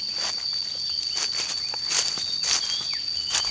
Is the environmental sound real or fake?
real